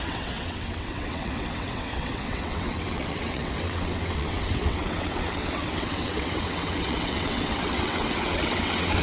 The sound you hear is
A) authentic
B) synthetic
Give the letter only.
B